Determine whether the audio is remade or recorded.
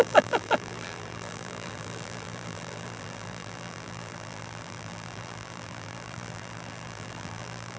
remade